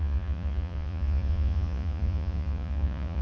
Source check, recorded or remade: remade